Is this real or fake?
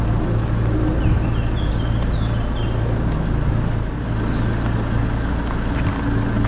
real